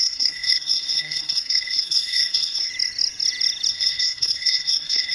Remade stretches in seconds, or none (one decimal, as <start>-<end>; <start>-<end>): 0.0-2.7; 3.7-5.1